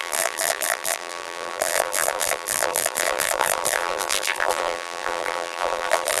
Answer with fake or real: fake